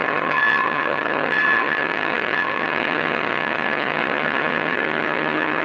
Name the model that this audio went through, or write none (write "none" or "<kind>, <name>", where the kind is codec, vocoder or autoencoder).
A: vocoder, HiFi-GAN